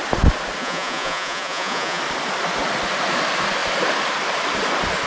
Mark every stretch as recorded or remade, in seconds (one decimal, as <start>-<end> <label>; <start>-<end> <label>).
0.0-0.6 recorded; 0.6-2.0 remade; 2.0-5.1 recorded